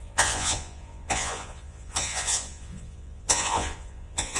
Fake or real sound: fake